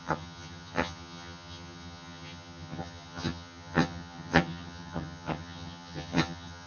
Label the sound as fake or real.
fake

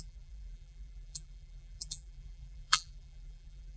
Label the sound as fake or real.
fake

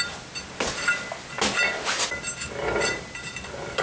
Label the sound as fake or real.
real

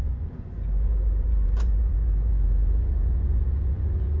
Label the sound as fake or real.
fake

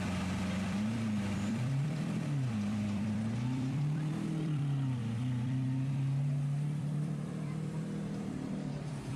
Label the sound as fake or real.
fake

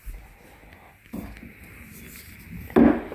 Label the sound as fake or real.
real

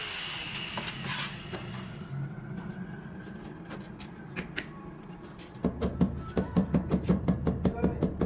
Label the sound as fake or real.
real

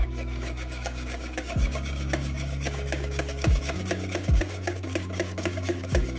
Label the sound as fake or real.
fake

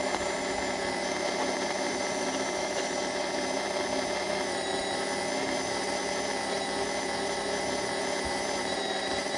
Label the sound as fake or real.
fake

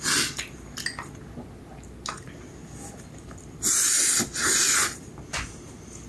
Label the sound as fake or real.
real